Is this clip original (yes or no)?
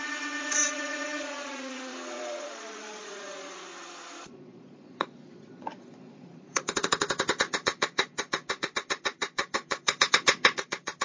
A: no